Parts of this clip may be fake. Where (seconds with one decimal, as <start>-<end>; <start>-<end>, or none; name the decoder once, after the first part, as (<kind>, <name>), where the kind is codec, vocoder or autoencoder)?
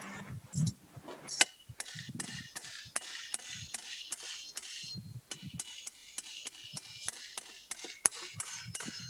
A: 8.1-9.1 (vocoder, BigVGAN v2)